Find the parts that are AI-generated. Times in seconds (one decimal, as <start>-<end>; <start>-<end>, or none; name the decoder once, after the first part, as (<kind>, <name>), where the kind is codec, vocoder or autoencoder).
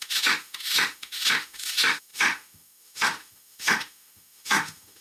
0.0-5.0 (autoencoder, DAC-VAE)